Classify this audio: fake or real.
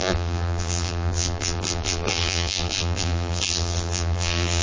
fake